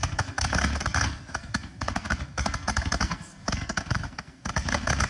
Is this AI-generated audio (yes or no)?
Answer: yes